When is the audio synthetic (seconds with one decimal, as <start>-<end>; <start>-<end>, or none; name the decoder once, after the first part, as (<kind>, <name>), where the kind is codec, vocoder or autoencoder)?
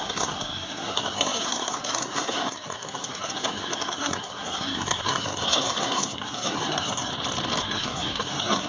0.0-7.1 (codec, SNAC); 7.6-8.7